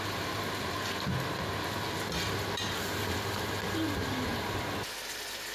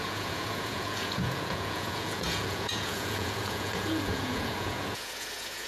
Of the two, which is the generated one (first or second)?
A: second